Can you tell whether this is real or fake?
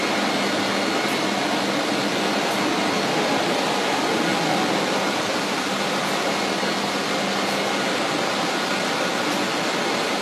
real